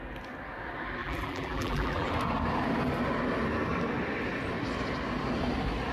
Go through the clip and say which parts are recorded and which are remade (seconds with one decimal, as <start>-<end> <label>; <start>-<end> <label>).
0.0-1.0 recorded; 1.0-2.1 remade; 2.1-5.9 recorded